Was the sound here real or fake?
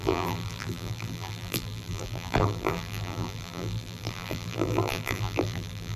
fake